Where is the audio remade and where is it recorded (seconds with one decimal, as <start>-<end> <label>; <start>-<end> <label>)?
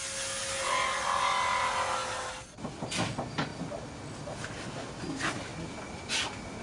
0.0-6.6 recorded